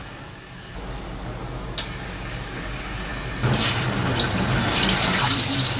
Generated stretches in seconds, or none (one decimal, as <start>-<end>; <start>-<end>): 0.0-1.4; 2.0-3.1; 5.2-5.8